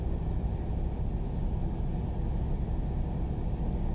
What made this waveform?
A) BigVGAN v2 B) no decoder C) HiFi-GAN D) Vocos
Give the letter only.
B